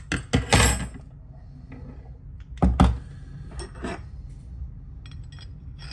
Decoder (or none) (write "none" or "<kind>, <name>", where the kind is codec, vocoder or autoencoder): none